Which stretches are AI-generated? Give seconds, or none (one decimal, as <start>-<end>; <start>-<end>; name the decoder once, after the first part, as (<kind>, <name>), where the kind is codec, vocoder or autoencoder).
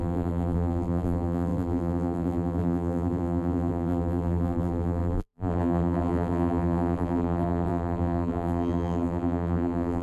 0.0-10.0 (vocoder, BigVGAN v2)